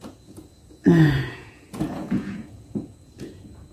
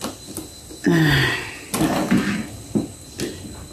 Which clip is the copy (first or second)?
first